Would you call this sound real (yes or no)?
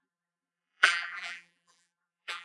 no